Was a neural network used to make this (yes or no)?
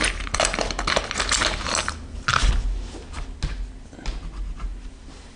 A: no